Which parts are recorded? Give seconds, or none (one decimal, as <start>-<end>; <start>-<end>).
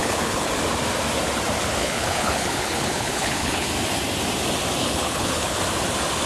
0.5-1.8; 3.7-4.8; 5.6-6.3